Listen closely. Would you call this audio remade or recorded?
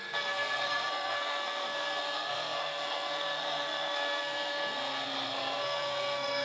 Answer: remade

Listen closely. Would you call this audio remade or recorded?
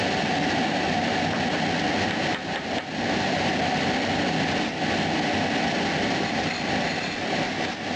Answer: recorded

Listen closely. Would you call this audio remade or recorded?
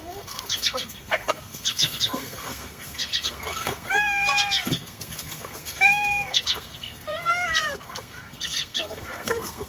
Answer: remade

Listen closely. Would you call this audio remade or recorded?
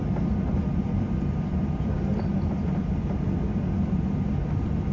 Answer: recorded